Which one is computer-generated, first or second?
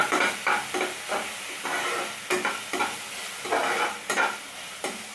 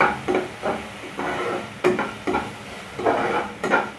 second